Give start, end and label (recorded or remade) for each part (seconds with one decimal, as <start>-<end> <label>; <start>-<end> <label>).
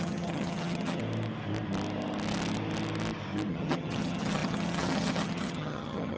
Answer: 0.0-1.0 remade; 1.0-3.5 recorded; 3.5-6.2 remade